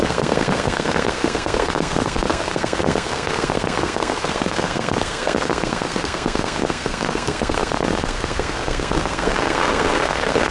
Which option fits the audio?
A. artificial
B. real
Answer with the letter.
A